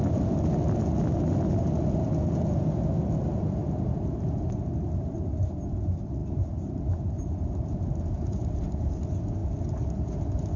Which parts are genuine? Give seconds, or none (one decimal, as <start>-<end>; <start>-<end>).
0.0-10.6